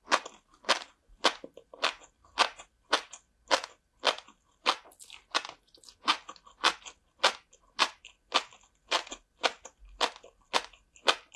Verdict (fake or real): real